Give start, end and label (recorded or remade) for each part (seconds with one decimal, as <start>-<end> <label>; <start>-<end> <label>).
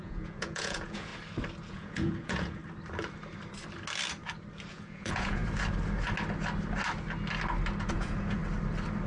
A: 0.0-1.1 remade; 1.1-1.7 recorded; 1.7-2.6 remade; 2.6-4.7 recorded; 4.7-5.4 remade; 5.4-7.9 recorded; 7.9-8.4 remade; 8.4-9.1 recorded